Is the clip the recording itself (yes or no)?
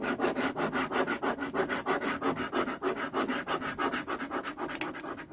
yes